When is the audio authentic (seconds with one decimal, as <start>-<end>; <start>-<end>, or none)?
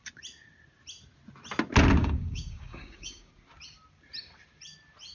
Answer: 0.0-2.0; 3.3-5.1